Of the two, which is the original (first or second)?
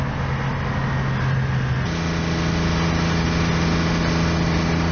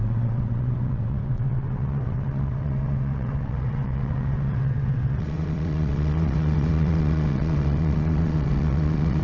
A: first